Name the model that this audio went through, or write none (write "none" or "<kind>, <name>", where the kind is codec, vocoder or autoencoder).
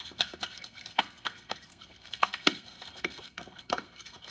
codec, SNAC